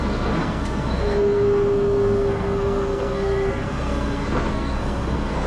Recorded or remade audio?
remade